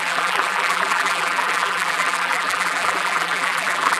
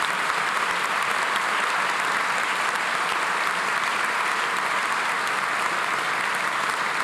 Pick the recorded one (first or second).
second